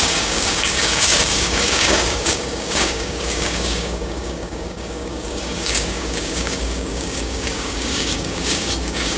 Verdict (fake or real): fake